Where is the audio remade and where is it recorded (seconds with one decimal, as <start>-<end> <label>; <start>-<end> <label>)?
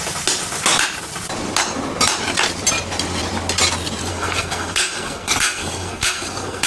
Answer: 0.0-4.1 recorded; 4.1-6.7 remade